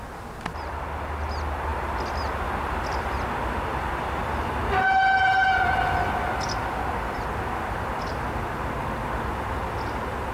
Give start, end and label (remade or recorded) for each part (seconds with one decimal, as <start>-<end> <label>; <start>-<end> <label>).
0.0-10.3 recorded